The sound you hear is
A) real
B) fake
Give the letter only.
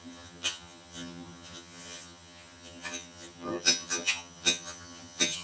B